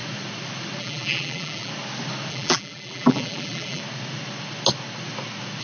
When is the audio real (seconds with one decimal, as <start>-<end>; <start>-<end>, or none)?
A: 0.0-0.8; 1.7-2.3; 3.8-5.6